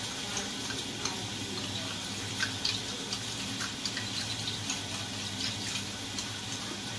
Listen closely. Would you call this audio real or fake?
real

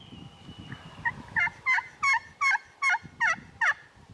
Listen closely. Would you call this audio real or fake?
real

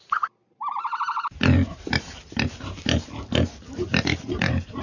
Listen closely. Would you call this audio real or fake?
fake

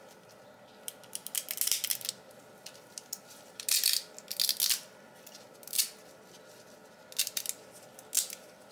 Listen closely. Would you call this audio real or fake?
real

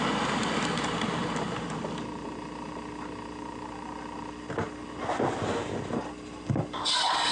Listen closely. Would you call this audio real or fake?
real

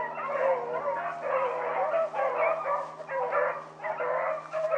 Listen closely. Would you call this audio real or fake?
real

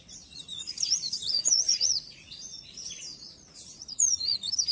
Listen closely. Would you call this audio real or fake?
fake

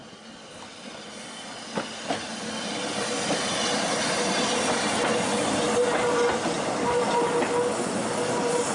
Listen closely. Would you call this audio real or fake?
real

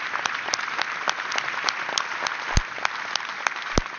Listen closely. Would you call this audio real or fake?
real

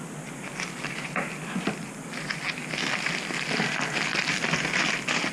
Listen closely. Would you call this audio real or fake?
real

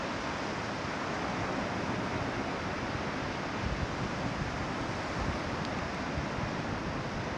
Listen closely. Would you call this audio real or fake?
real